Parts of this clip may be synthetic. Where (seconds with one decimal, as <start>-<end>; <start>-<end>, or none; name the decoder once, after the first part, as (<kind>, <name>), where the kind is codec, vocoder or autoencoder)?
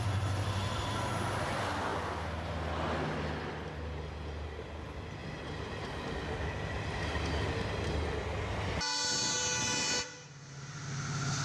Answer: none